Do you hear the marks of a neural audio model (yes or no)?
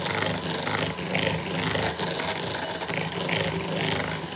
no